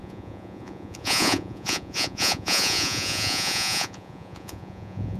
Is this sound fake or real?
fake